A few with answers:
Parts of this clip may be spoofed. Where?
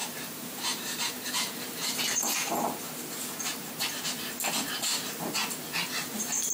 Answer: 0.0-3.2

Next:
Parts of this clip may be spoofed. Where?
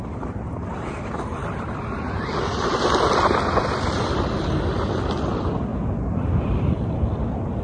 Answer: none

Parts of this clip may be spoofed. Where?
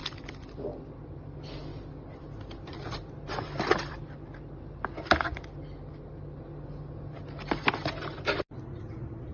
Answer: none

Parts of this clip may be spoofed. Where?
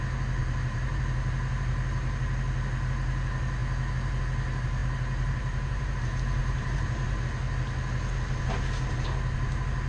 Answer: 0.4-1.0; 4.8-6.0; 6.4-7.2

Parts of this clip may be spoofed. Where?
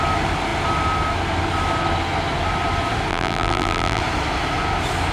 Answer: 3.1-4.0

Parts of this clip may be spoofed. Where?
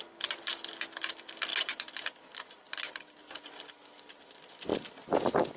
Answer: none